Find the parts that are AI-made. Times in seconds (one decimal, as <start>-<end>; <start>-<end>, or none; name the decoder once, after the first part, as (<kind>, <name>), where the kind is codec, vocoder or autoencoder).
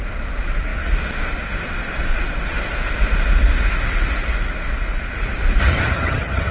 5.6-6.5 (vocoder, HiFi-GAN)